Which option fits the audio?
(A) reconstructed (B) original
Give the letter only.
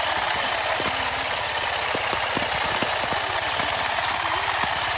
B